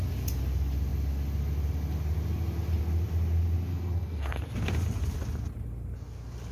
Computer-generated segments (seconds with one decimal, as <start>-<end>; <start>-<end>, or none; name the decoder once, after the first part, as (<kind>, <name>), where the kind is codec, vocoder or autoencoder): 3.7-4.4 (codec, SNAC)